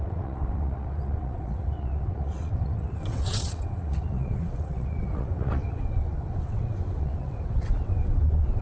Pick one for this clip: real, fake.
fake